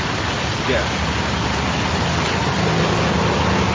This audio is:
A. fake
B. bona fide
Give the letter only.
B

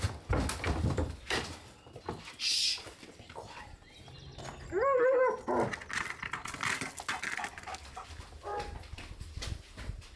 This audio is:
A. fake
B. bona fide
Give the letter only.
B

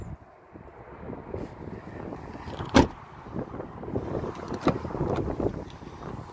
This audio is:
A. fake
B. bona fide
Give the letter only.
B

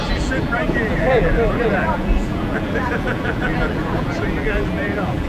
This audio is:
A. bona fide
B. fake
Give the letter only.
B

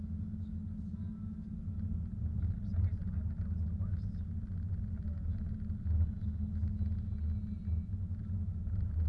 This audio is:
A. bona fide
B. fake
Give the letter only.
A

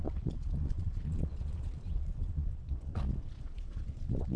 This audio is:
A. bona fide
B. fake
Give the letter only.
B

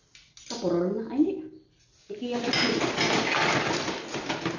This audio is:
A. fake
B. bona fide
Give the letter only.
B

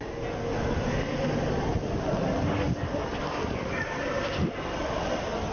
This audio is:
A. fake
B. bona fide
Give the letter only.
B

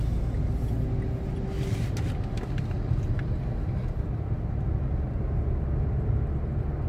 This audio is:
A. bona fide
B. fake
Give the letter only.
A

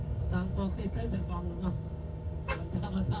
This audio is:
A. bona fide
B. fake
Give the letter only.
B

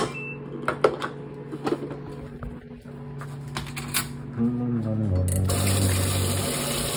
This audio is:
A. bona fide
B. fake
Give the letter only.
A